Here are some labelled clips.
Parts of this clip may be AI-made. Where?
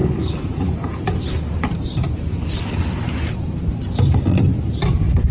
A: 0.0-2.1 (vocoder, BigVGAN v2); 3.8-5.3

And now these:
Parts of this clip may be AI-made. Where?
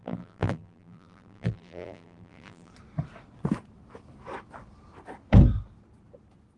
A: 0.0-2.7 (vocoder, BigVGAN v2)